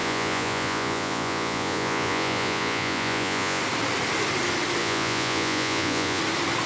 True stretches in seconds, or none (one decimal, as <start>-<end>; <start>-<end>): 3.6-4.8; 6.2-6.7